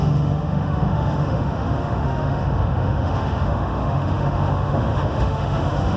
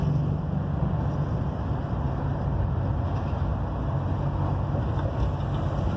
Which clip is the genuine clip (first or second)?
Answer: second